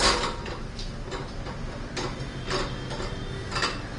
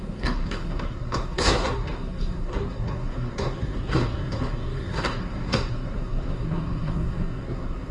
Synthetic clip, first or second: second